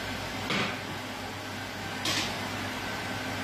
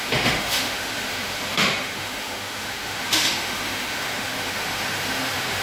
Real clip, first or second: first